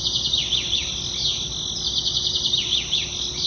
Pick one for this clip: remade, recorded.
recorded